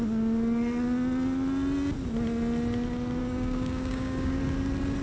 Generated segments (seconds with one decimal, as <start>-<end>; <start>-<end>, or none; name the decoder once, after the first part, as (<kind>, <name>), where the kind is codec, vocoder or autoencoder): 3.2-4.4 (codec, DAC)